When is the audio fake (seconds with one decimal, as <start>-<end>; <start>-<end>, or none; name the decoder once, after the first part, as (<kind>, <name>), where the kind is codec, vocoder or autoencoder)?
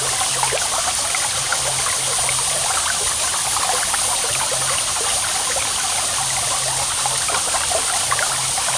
none